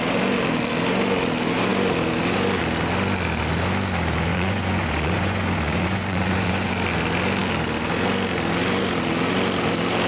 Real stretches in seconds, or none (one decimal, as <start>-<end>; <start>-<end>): 0.0-4.3; 6.7-10.1